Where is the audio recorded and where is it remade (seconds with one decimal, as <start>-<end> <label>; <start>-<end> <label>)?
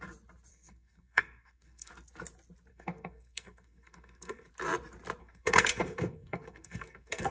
0.0-0.5 recorded; 0.5-1.9 remade; 1.9-2.7 recorded; 2.7-4.5 remade; 4.5-5.2 recorded; 5.2-7.3 remade